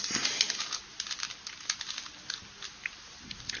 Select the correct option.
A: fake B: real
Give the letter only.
B